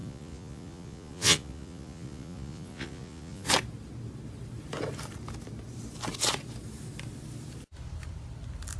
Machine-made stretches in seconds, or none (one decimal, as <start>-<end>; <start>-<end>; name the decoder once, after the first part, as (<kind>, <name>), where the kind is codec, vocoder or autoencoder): 0.0-3.5 (vocoder, Vocos)